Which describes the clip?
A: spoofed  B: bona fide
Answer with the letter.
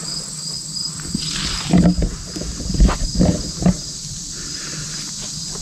B